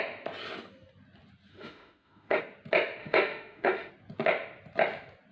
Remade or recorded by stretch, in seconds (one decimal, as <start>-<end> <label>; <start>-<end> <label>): 0.0-1.5 recorded; 1.5-2.4 remade; 2.4-3.0 recorded; 3.0-3.9 remade; 3.9-5.3 recorded